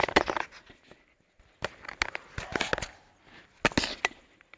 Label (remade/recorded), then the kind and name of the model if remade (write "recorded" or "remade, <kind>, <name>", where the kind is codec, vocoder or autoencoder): recorded